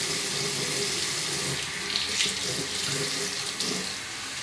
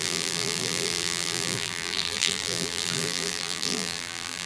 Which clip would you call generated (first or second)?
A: second